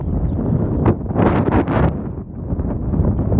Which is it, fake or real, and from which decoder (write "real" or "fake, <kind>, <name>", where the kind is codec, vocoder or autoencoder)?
real